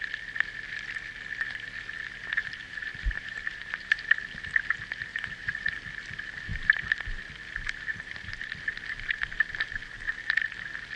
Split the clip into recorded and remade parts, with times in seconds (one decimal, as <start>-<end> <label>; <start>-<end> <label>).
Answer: 0.0-2.4 recorded; 2.4-4.0 remade; 4.0-5.1 recorded; 5.1-5.7 remade; 5.7-7.9 recorded; 7.9-8.5 remade; 8.5-11.0 recorded